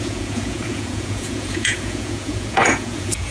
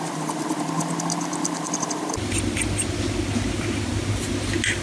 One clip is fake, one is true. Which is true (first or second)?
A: second